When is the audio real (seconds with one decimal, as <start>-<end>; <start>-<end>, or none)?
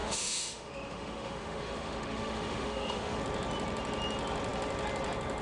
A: 3.2-5.4